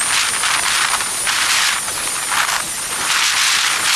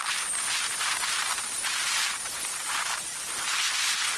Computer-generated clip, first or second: second